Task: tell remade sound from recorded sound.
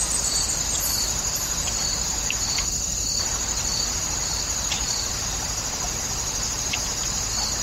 recorded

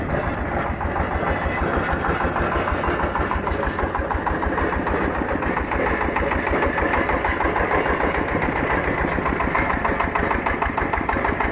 recorded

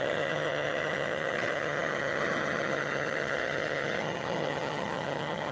remade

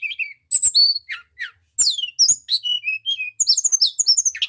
recorded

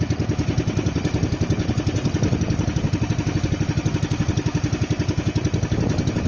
recorded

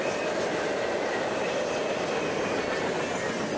recorded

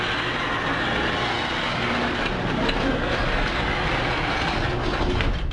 recorded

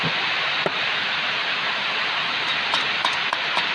recorded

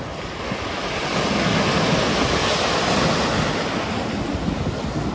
recorded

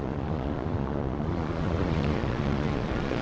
remade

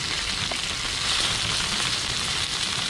recorded